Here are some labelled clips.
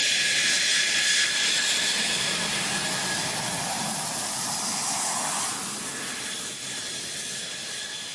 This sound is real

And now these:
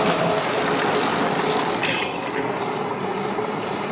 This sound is real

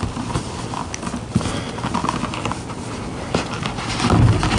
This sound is real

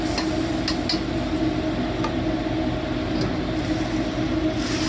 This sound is real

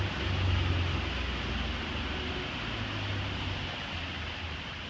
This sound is real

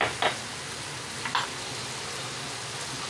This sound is real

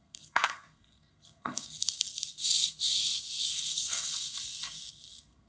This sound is fake